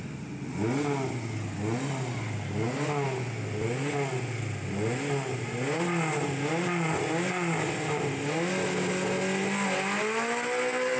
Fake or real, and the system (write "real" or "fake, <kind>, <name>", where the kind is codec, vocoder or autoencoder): real